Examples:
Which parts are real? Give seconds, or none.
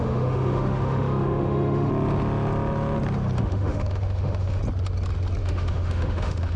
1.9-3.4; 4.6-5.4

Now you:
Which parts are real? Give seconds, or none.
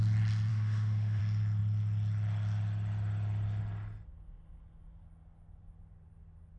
0.0-0.5; 1.2-6.6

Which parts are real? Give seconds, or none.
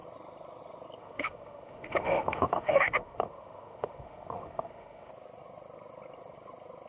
0.0-1.0; 5.1-6.9